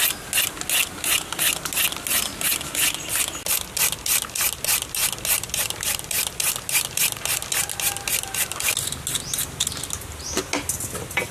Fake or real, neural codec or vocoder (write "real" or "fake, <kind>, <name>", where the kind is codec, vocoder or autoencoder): real